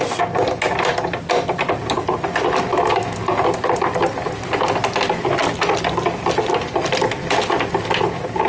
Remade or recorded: recorded